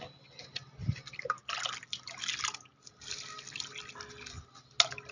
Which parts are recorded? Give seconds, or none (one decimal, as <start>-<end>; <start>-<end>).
0.0-5.1